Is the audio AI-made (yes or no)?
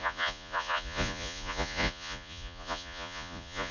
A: yes